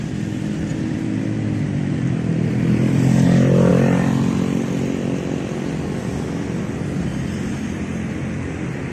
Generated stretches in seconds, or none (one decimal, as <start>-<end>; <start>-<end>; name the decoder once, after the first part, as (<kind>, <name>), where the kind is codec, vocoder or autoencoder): 0.0-3.7 (vocoder, BigVGAN v2); 6.7-8.9